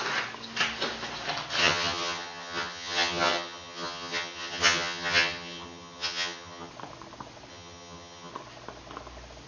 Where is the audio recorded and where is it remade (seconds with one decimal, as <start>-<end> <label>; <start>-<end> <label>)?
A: 0.0-1.6 recorded; 1.6-6.7 remade; 6.7-7.5 recorded; 7.5-8.3 remade; 8.3-9.5 recorded